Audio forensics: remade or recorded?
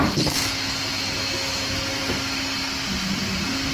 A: recorded